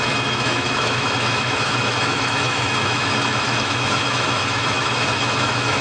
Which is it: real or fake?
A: fake